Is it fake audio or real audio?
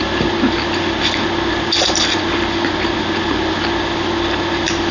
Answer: real